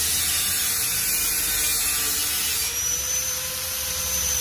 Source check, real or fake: fake